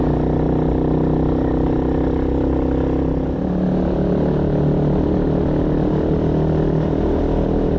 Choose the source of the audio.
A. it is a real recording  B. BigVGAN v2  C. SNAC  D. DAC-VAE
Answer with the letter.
A